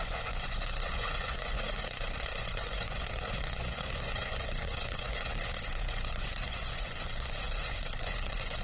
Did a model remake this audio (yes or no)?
yes